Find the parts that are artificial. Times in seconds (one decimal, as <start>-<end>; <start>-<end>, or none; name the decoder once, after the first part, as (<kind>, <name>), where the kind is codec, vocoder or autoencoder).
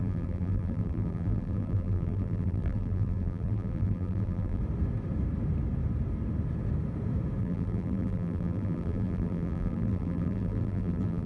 0.0-4.6 (vocoder, BigVGAN v2); 7.4-11.3